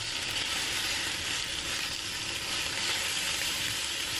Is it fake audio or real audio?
real